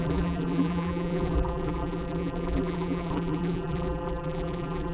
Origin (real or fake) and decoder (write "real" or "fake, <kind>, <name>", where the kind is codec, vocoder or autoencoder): fake, vocoder, BigVGAN v2